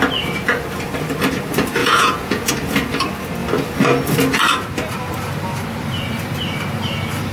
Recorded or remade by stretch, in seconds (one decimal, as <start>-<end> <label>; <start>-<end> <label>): 0.0-1.8 recorded; 1.8-2.5 remade; 2.5-7.3 recorded